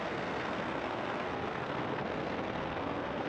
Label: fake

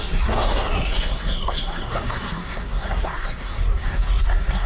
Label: fake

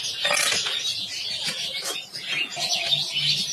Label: real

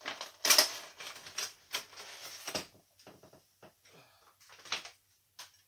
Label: real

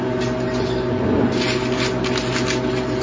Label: real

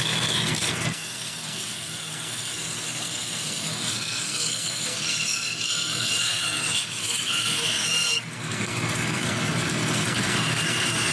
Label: fake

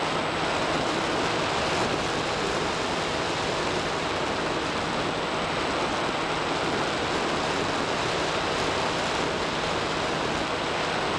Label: real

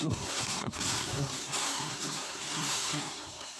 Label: fake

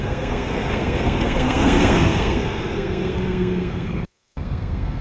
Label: fake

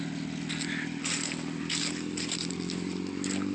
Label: real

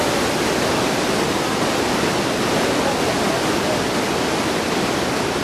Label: real